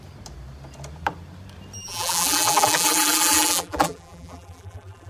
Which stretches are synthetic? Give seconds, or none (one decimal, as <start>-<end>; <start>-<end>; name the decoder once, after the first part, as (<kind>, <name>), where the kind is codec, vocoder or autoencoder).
1.8-5.1 (vocoder, BigVGAN v2)